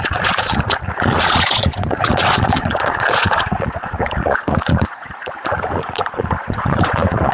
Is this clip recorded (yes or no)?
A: no